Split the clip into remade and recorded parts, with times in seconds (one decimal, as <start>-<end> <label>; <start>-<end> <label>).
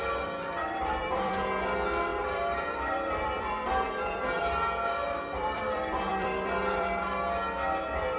0.0-0.6 recorded; 0.6-1.3 remade; 1.3-2.1 recorded; 2.1-4.4 remade; 4.4-5.4 recorded; 5.4-7.0 remade; 7.0-8.2 recorded